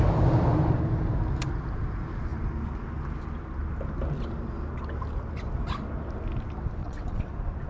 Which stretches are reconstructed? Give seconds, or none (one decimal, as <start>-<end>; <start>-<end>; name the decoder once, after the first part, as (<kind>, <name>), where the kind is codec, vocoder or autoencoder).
6.8-7.3 (vocoder, WaveNeXt)

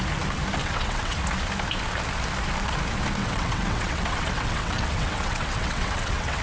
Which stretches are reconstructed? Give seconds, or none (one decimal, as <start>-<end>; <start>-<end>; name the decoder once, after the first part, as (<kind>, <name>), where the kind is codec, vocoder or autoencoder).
0.6-1.2 (vocoder, WaveNeXt); 3.2-6.4

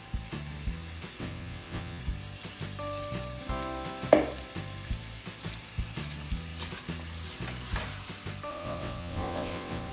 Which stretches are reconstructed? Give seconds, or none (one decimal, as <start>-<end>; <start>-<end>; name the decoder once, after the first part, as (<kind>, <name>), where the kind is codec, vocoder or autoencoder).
1.2-2.0 (vocoder, WaveNeXt); 8.5-9.9

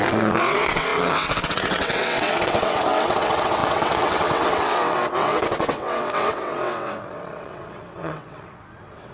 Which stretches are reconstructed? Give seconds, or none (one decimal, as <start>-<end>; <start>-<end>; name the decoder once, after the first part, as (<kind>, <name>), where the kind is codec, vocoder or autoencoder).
0.0-9.1 (vocoder, WaveNeXt)

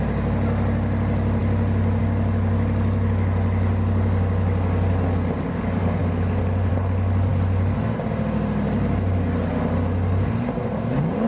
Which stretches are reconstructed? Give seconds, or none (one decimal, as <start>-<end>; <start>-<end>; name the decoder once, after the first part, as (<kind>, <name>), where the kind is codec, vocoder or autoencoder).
none

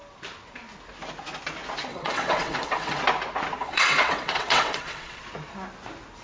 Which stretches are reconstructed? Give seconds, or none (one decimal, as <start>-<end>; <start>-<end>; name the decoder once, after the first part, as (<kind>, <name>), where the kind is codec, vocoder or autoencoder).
1.9-3.0 (vocoder, WaveNeXt); 3.6-5.2

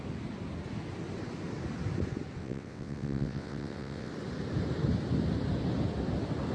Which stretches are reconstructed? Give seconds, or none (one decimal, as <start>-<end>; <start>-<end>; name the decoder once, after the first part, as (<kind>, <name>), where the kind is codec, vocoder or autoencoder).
2.4-4.1 (vocoder, WaveNeXt)

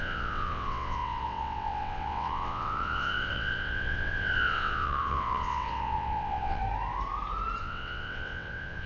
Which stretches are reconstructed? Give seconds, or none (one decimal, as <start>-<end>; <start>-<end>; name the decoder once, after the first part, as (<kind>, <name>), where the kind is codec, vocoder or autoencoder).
0.0-6.6 (vocoder, WaveNeXt); 7.6-8.9